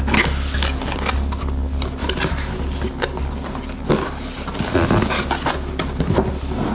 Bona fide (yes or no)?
yes